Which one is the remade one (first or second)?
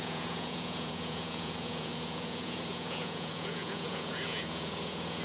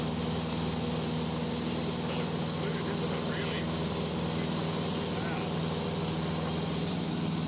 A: first